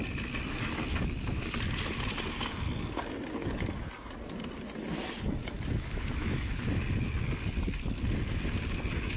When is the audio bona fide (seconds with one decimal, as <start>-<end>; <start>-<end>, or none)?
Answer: 0.0-0.9; 1.4-5.4; 6.6-9.2